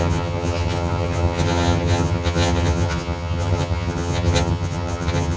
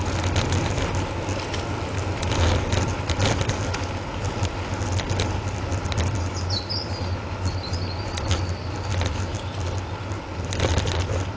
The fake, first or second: first